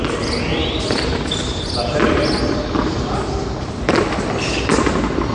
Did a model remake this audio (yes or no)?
no